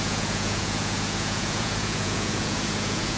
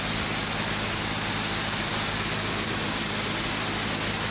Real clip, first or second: second